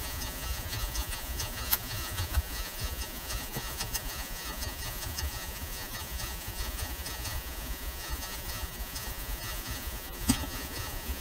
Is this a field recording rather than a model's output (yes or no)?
no